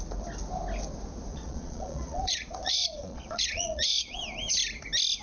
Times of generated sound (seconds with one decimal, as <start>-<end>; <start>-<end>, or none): 1.3-4.2